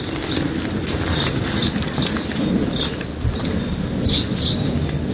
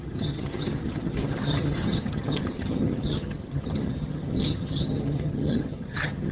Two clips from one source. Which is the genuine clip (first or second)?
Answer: first